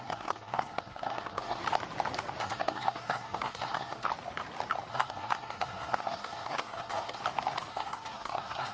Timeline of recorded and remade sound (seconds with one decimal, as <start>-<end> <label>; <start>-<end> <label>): 0.0-1.6 remade; 1.6-2.4 recorded; 2.4-4.1 remade; 4.1-4.9 recorded; 4.9-7.2 remade; 7.2-7.7 recorded; 7.7-8.7 remade